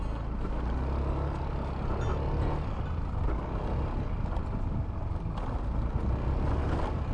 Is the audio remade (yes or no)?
no